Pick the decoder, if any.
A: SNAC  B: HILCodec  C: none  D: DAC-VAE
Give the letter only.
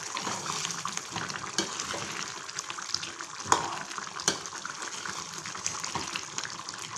C